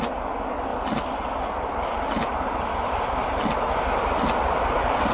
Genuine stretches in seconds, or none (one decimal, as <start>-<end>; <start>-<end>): 0.0-5.1